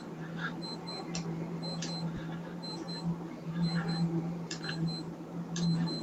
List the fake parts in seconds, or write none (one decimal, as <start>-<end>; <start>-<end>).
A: none